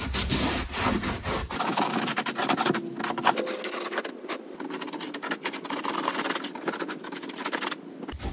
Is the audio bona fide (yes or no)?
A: yes